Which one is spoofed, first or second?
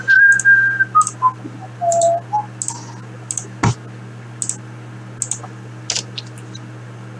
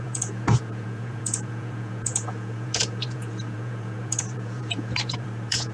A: second